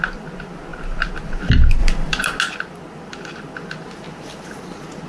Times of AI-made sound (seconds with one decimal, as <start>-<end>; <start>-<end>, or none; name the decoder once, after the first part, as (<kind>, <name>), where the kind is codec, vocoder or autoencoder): 1.8-2.4 (vocoder, BigVGAN v2)